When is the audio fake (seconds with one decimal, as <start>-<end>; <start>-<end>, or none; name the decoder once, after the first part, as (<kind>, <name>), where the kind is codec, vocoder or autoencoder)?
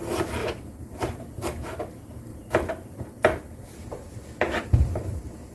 0.4-1.9 (vocoder, BigVGAN v2); 2.3-5.5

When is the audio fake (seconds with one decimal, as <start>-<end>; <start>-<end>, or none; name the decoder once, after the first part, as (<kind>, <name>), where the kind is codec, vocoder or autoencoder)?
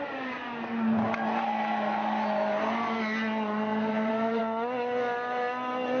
0.0-0.4 (vocoder, BigVGAN v2); 3.9-4.4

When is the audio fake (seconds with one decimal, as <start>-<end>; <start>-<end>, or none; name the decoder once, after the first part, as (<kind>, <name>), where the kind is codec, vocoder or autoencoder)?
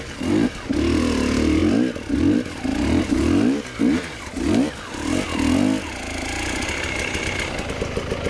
none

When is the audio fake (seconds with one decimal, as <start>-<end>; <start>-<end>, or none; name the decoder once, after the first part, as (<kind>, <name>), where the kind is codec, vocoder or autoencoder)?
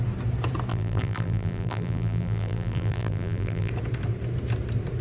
0.7-3.7 (vocoder, BigVGAN v2)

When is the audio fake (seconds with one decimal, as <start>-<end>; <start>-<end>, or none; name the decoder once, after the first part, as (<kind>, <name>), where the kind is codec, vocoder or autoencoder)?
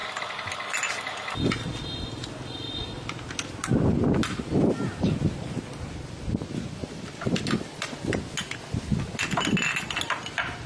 6.8-8.2 (vocoder, BigVGAN v2)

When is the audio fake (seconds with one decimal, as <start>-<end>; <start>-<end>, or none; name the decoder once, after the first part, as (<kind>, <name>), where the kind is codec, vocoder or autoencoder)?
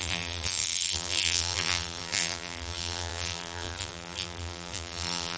0.0-5.4 (vocoder, BigVGAN v2)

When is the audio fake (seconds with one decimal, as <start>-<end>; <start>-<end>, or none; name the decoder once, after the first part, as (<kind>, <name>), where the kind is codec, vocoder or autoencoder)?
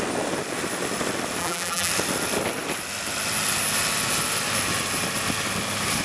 1.4-1.9 (vocoder, BigVGAN v2)